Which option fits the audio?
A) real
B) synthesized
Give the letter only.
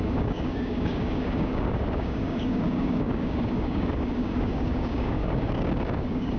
B